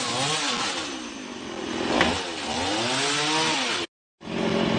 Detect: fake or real real